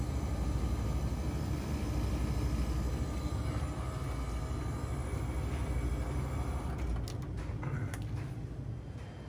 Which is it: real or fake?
real